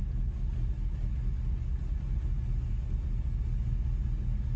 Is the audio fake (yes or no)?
no